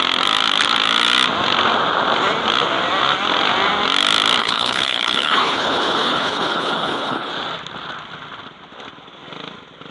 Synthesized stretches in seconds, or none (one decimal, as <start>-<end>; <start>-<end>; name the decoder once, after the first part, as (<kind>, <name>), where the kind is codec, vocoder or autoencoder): 4.4-7.3 (codec, HILCodec)